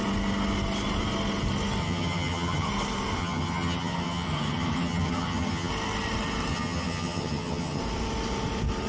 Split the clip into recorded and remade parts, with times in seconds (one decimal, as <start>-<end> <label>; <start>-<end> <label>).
0.0-1.8 recorded; 1.8-2.7 remade; 2.7-3.2 recorded; 3.2-5.7 remade; 5.7-6.5 recorded; 6.5-7.8 remade; 7.8-8.9 recorded